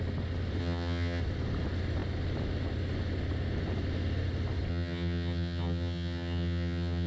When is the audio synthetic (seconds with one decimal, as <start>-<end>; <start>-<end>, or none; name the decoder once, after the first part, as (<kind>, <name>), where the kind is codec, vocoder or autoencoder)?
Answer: 0.6-1.2 (vocoder, HiFi-GAN); 4.7-7.1